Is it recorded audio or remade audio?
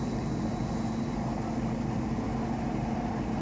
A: recorded